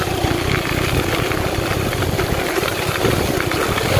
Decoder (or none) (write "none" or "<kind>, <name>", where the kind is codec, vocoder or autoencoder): none